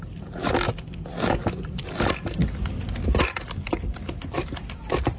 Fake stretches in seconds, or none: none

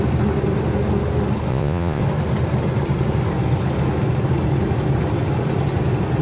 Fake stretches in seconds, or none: 1.5-2.0